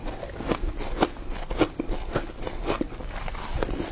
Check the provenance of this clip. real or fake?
real